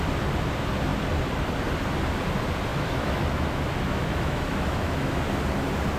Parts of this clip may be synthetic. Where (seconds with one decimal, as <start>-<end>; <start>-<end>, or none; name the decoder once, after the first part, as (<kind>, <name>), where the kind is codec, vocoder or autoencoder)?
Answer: 2.7-5.2 (autoencoder, DAC-VAE)